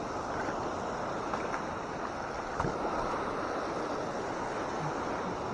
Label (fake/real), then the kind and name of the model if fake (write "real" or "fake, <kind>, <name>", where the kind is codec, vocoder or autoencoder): real